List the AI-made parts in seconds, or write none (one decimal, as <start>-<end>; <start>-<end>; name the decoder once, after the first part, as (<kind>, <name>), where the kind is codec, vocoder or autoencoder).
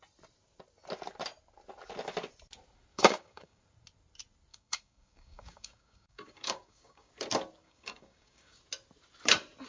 2.9-3.6 (codec, DAC); 4.5-7.1; 7.6-8.6